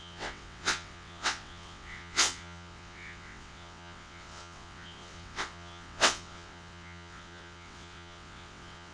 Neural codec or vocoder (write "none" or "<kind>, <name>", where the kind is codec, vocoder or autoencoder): vocoder, WaveNeXt